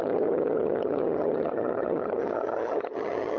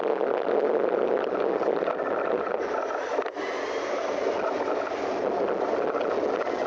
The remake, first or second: first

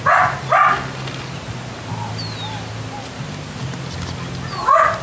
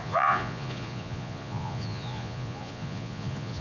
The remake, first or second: second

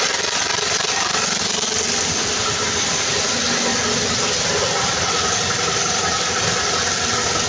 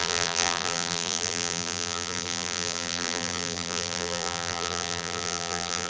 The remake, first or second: second